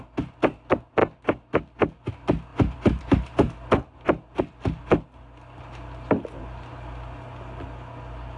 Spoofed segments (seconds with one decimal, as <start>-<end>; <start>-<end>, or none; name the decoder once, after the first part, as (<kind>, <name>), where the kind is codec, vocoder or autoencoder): none